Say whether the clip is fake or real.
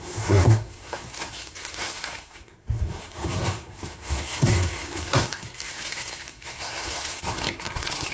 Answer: fake